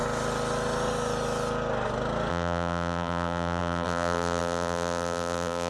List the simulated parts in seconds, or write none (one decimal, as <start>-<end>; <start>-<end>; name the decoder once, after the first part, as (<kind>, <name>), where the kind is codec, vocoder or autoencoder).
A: 2.3-5.7 (vocoder, BigVGAN v2)